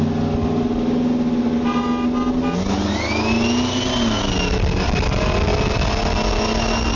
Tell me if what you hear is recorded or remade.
recorded